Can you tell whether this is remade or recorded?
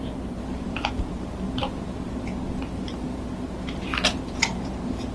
recorded